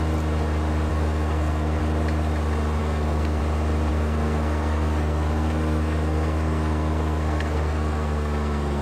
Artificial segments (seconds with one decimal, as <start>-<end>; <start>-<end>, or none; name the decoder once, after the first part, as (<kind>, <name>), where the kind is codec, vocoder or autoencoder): 0.9-1.8 (codec, SNAC); 2.8-3.4; 3.9-8.8